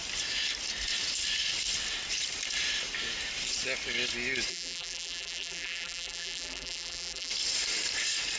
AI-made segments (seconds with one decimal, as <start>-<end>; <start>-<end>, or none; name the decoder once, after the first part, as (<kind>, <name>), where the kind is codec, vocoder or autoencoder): 4.5-7.3 (vocoder, BigVGAN v2)